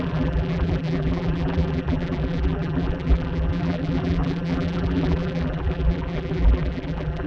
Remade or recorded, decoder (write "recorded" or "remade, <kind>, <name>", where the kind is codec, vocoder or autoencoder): remade, vocoder, BigVGAN v2